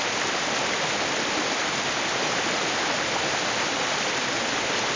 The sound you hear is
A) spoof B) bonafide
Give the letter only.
A